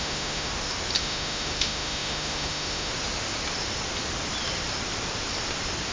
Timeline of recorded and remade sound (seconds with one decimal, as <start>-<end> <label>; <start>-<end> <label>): 0.0-0.5 remade; 0.5-1.0 recorded; 1.0-2.9 remade; 2.9-5.9 recorded